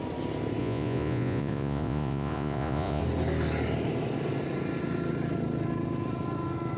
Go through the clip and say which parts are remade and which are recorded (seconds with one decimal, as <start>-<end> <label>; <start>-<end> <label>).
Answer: 0.0-0.6 recorded; 0.6-3.0 remade; 3.0-6.8 recorded